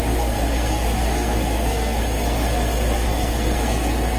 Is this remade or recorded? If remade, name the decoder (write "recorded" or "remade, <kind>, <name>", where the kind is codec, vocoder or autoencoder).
remade, codec, SNAC